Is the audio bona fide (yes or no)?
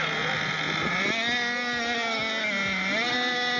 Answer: yes